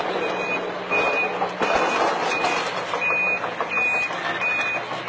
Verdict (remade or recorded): recorded